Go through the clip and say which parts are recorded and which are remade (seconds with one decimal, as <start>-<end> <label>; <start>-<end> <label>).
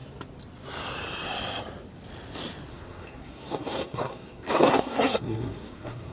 0.0-2.7 recorded; 2.7-6.1 remade